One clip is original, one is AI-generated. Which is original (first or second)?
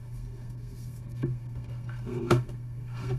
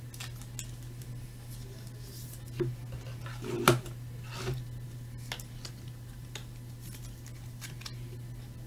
second